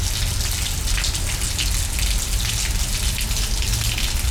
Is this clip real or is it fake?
real